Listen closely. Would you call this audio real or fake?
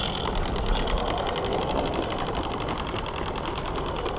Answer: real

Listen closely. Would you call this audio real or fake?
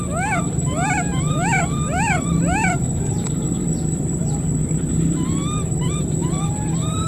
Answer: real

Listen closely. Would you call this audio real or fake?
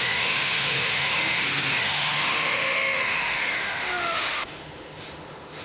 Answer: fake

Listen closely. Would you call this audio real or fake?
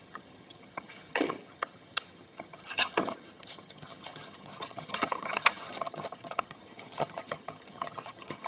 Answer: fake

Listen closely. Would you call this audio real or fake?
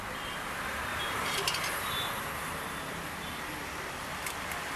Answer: fake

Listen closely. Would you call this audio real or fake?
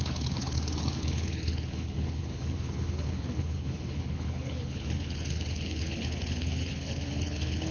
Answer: fake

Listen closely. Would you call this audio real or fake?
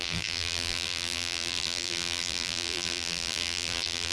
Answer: fake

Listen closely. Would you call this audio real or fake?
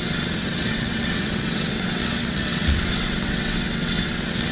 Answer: fake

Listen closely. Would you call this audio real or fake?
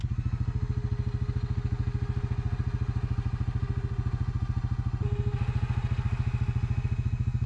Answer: real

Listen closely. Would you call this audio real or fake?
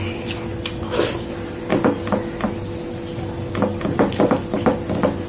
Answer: real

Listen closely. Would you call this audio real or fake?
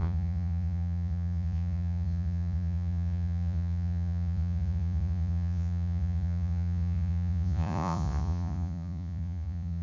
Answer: fake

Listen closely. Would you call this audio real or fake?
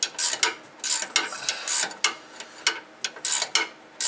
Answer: real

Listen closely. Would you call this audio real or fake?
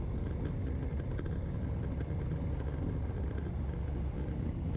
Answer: real